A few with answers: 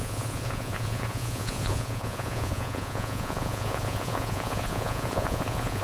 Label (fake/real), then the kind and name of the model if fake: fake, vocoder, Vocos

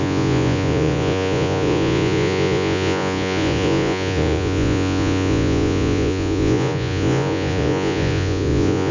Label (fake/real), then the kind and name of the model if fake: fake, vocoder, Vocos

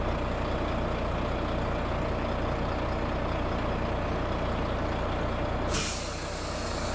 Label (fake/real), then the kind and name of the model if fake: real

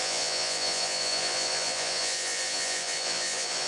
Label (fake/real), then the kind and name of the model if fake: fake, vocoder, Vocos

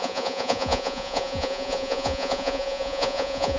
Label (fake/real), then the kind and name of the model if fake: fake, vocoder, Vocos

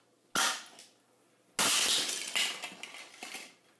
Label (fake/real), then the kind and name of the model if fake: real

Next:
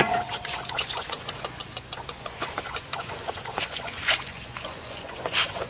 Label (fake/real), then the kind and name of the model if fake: fake, vocoder, Vocos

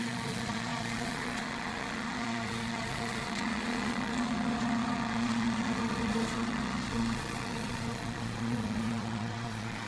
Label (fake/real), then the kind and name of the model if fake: fake, vocoder, Vocos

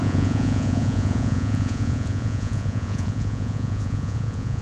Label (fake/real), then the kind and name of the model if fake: fake, vocoder, Vocos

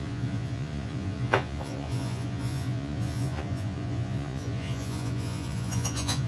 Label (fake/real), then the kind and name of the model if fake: fake, vocoder, Vocos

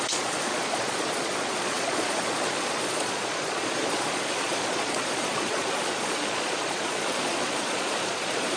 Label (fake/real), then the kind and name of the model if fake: fake, vocoder, Vocos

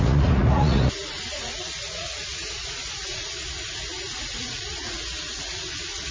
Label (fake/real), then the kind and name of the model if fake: fake, vocoder, Vocos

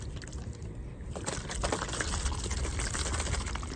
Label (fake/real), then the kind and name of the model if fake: real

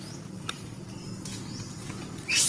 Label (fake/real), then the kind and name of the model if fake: real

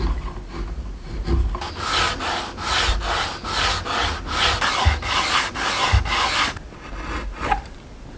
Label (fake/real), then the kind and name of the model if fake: real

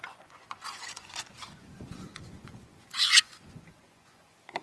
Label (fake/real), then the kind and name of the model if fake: fake, vocoder, Vocos